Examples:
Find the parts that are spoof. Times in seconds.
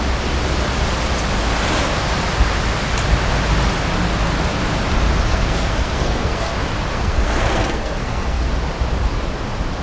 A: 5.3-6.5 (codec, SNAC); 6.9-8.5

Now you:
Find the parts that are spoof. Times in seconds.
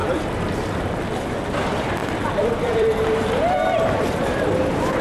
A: 2.0-5.0 (vocoder, BigVGAN v2)